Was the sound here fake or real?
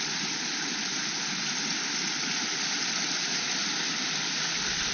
real